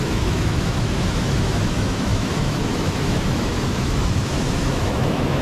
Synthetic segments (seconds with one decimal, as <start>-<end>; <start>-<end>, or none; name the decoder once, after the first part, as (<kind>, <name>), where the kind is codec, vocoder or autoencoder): 0.0-5.4 (autoencoder, DAC-VAE)